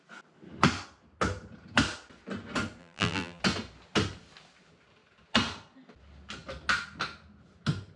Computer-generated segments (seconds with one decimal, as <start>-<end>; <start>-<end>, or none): 2.8-3.4